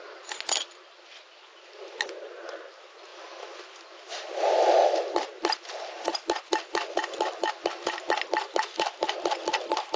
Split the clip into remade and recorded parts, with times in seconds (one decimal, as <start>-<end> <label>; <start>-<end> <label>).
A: 0.0-10.0 recorded